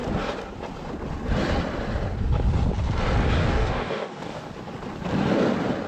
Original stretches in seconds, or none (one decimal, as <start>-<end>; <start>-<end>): 0.0-3.4; 4.5-5.9